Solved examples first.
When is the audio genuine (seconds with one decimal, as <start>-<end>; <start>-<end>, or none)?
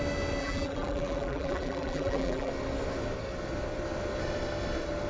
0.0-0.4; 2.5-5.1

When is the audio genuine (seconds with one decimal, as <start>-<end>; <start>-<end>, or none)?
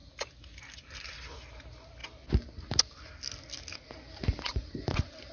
0.0-4.5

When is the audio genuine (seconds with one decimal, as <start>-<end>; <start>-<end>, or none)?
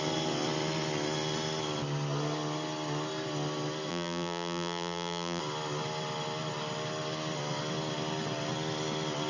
0.0-3.9; 5.4-9.3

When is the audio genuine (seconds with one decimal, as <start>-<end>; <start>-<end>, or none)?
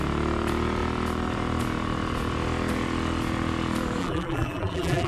0.0-4.0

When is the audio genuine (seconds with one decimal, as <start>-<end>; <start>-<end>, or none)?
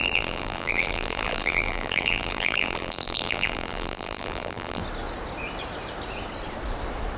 4.8-7.2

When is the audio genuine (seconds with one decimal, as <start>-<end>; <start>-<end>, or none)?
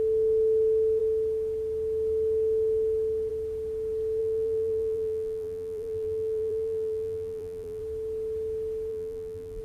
0.0-4.2; 7.8-8.9